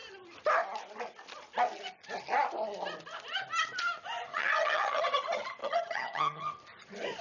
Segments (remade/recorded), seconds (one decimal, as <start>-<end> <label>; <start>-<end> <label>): 0.0-4.3 recorded; 4.3-5.0 remade; 5.0-5.6 recorded; 5.6-6.5 remade; 6.5-7.2 recorded